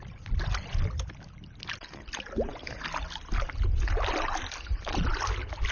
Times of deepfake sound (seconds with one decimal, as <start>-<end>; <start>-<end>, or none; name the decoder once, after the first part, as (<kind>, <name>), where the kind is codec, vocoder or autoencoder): none